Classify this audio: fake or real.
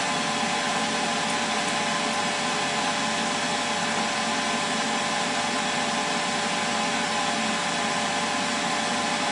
real